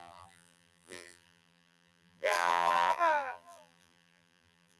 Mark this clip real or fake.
fake